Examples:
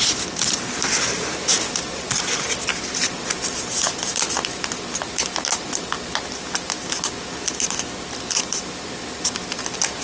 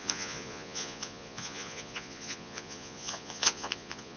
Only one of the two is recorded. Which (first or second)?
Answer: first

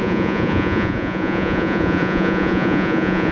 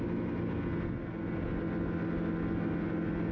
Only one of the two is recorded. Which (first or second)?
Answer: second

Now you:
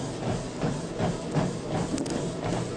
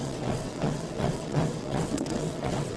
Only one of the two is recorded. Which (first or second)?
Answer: first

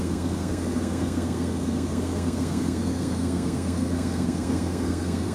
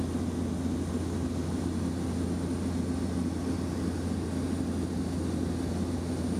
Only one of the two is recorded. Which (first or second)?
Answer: second